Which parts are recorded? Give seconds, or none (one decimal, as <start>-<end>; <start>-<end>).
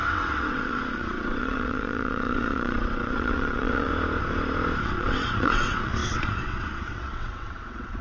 3.9-4.8